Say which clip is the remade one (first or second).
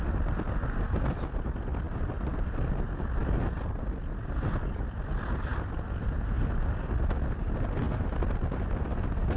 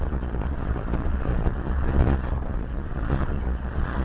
second